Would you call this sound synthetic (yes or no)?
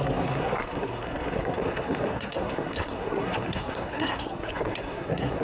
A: yes